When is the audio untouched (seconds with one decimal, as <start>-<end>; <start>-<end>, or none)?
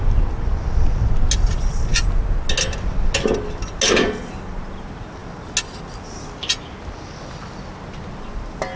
0.0-8.8